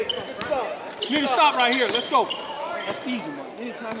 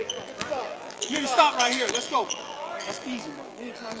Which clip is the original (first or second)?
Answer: first